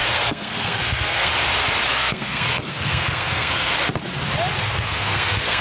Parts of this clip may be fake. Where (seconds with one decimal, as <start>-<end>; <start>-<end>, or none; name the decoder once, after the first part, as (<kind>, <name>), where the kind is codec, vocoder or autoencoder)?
0.0-1.3 (codec, SNAC); 1.9-3.7; 4.6-5.6